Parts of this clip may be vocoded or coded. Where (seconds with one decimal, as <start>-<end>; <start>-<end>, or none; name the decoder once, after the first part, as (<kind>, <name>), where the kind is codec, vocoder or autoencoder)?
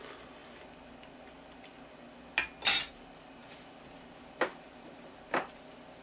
none